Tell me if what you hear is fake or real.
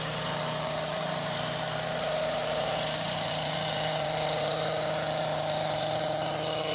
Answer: fake